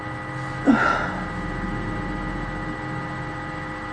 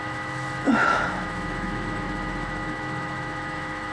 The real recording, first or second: first